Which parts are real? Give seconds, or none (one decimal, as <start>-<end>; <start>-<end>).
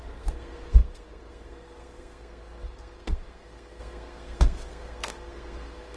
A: none